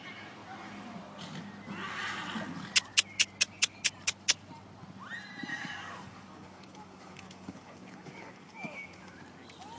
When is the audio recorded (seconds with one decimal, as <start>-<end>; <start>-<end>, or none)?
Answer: 0.0-5.5; 9.2-9.8